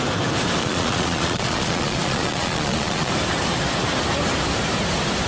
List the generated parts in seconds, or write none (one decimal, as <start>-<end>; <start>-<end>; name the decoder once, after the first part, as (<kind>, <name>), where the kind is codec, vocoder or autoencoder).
0.6-3.1 (vocoder, Vocos)